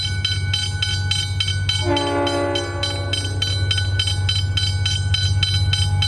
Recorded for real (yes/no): yes